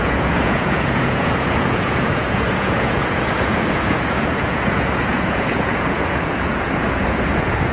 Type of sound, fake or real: fake